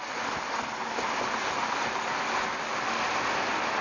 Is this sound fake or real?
real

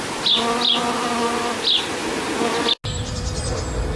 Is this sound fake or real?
real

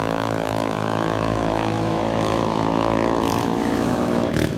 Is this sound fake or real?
fake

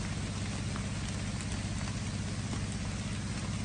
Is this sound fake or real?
real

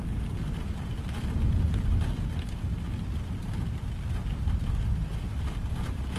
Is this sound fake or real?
real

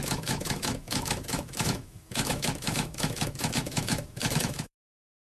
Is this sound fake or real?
fake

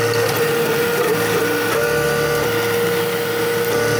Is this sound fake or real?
real